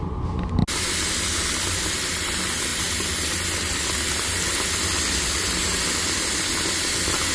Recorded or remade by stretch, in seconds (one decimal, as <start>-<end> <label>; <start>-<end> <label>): 0.0-7.3 recorded